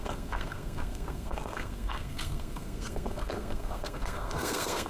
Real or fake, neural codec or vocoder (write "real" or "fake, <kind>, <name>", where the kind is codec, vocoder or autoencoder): fake, codec, SNAC